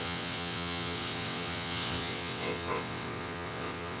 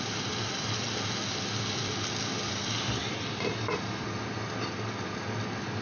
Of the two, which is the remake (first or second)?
first